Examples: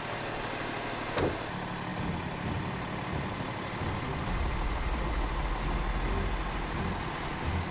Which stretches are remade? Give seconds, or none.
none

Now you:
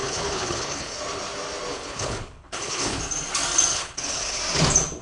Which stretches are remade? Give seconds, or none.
0.0-1.0; 1.7-3.0; 3.7-4.4

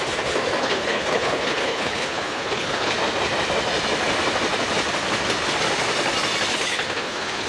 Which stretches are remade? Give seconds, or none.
0.6-2.9; 6.5-7.5